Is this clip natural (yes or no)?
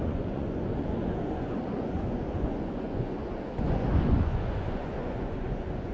no